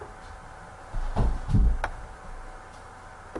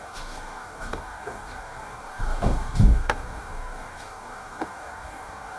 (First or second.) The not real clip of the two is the second